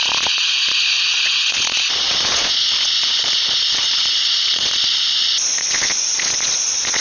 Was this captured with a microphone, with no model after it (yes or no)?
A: no